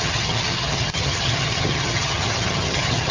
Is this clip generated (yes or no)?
yes